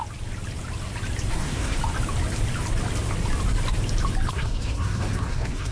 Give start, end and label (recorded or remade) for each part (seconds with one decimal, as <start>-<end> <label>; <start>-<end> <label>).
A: 0.0-1.3 recorded; 1.3-1.8 remade; 1.8-4.3 recorded; 4.3-5.7 remade